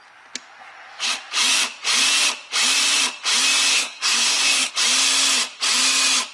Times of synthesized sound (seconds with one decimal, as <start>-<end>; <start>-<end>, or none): 3.7-4.7